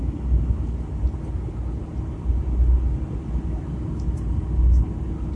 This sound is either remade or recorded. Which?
recorded